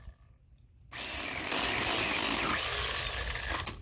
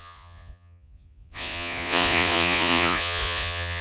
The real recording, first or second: first